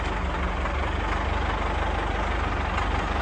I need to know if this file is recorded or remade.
recorded